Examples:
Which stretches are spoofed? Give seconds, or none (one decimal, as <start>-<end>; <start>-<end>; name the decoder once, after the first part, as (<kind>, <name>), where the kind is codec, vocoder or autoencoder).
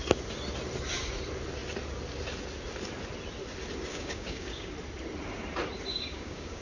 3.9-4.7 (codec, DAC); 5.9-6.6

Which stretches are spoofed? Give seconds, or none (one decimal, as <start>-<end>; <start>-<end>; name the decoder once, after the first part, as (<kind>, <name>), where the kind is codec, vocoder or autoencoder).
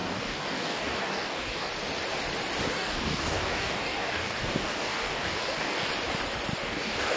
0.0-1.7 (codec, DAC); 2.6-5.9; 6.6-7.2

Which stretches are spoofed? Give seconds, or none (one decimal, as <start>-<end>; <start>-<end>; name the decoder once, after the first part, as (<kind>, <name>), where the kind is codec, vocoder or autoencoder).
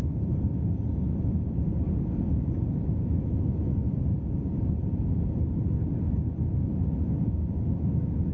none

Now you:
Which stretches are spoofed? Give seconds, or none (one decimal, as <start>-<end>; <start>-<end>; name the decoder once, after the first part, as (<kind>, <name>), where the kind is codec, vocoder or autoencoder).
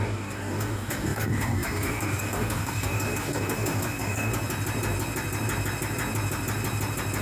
0.0-4.3 (codec, DAC)